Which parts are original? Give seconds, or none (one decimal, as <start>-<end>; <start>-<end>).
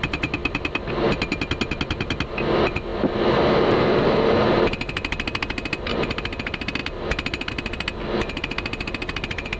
0.0-0.4; 0.9-2.9; 4.7-9.6